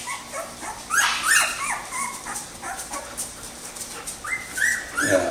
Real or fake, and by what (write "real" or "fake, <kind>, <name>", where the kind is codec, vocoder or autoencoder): real